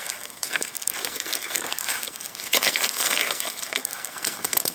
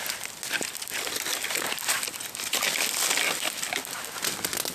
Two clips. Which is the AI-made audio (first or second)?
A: first